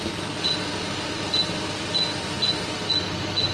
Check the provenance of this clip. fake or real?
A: real